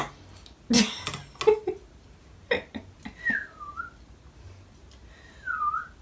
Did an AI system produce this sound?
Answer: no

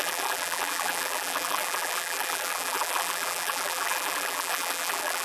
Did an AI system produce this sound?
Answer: yes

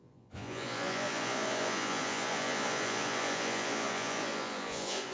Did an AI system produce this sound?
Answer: yes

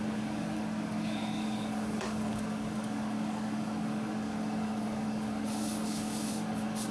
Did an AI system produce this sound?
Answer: yes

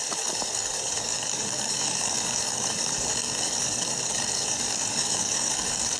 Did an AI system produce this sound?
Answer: yes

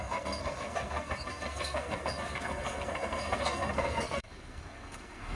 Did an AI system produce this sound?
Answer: yes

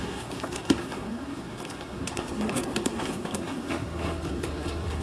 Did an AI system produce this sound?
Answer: yes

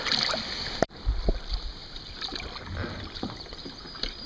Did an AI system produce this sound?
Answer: no